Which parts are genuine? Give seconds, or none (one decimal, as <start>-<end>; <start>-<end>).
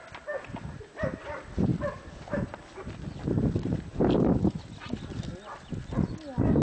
0.0-6.6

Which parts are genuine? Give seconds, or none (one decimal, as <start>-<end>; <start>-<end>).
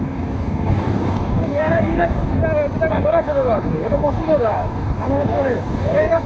2.4-2.9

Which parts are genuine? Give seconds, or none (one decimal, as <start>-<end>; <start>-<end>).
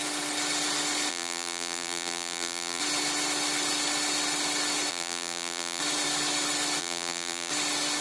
0.0-1.1; 2.8-4.9; 5.8-6.8; 7.5-8.0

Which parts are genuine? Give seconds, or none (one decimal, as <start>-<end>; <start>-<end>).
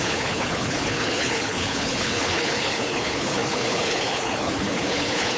none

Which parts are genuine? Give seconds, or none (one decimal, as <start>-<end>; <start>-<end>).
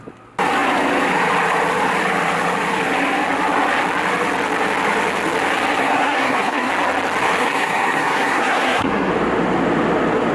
0.0-5.8; 6.7-7.4; 9.1-10.3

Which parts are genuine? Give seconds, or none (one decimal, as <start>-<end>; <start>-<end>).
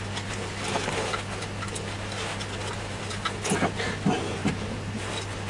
0.0-4.4; 5.1-5.5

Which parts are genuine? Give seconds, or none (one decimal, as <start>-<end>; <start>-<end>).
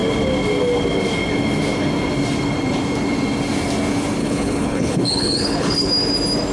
0.0-4.2; 5.9-6.5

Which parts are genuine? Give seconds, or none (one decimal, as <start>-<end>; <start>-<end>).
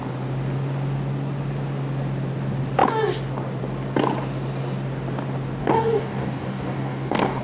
0.0-5.6